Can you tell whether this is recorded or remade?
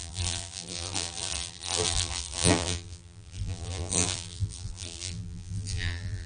remade